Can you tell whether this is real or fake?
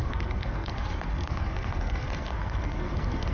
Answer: fake